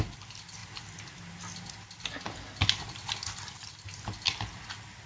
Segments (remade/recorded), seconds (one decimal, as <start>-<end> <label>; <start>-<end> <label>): 0.0-5.1 recorded